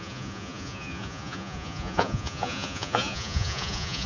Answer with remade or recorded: remade